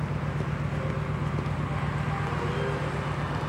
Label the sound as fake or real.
real